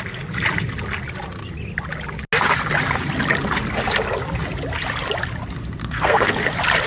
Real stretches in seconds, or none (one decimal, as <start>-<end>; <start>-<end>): 0.0-5.8; 6.3-6.9